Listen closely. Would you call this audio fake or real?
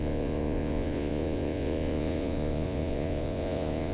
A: fake